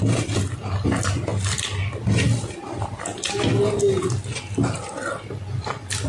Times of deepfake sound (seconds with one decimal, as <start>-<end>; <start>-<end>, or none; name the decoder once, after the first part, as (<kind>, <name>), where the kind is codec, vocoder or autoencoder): none

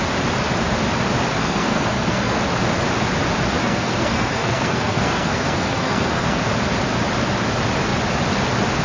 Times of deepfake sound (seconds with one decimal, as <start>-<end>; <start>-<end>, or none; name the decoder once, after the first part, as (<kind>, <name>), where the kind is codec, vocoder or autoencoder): 1.4-2.4 (codec, SNAC); 3.6-6.4

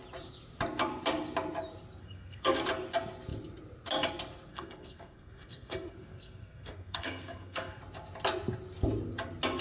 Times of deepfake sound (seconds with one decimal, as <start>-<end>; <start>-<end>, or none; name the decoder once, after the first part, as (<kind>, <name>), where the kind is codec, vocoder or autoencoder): 2.0-2.6 (codec, SNAC); 4.5-7.8

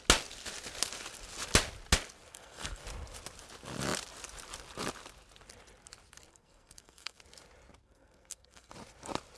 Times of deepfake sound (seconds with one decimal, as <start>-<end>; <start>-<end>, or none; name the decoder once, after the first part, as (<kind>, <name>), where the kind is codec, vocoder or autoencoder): 2.3-2.8 (codec, SNAC); 6.3-7.2; 7.8-8.7